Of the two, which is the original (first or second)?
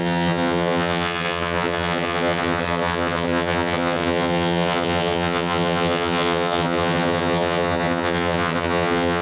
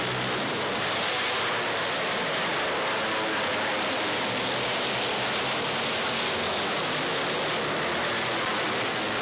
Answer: second